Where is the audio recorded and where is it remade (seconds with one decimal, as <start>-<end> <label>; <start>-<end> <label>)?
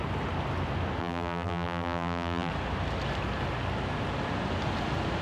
0.0-1.0 recorded; 1.0-2.5 remade; 2.5-5.2 recorded